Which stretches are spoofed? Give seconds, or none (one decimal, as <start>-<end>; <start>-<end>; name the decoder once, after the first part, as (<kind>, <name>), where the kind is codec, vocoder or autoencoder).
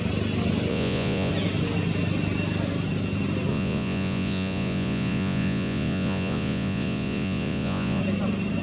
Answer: 0.7-1.3 (vocoder, Vocos); 3.5-8.0